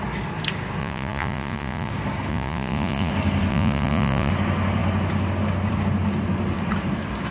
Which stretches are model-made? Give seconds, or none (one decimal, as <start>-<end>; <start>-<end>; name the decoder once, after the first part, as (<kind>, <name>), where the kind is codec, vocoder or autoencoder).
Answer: 0.8-1.9 (vocoder, Vocos); 2.3-3.1; 3.5-4.3